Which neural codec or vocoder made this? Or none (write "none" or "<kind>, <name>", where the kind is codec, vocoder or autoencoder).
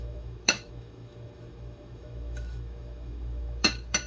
autoencoder, DAC-VAE